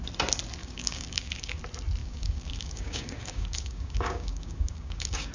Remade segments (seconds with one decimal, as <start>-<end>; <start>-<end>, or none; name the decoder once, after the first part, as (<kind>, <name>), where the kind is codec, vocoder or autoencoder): 0.6-1.6 (codec, DAC); 2.0-5.3